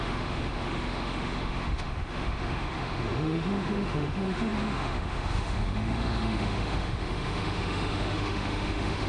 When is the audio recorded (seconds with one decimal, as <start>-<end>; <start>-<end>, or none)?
none